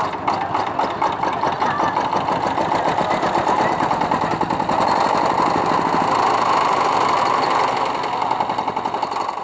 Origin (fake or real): real